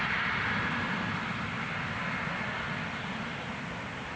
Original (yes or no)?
yes